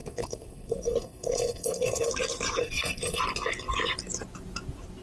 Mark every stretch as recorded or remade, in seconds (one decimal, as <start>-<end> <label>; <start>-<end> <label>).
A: 0.0-2.1 remade; 2.1-2.6 recorded; 2.6-3.2 remade; 3.2-5.0 recorded